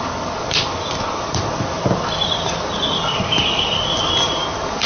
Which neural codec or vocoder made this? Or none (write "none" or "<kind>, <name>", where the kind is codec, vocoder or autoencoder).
none